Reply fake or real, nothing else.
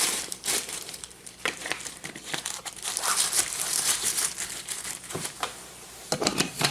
fake